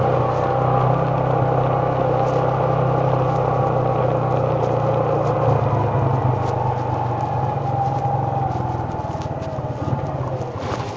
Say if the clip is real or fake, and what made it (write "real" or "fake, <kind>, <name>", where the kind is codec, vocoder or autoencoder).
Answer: real